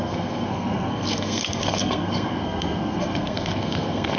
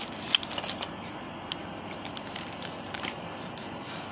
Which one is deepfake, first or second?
first